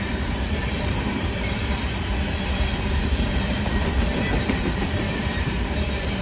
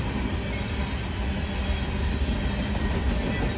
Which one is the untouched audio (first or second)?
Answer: second